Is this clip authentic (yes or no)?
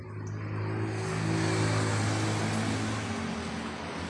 yes